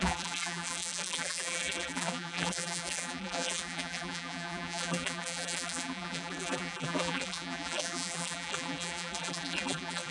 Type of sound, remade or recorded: remade